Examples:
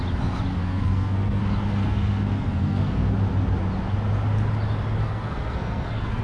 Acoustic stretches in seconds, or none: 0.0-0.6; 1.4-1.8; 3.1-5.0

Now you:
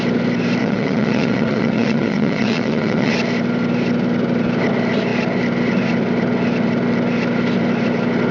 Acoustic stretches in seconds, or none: 0.0-0.6; 3.1-8.3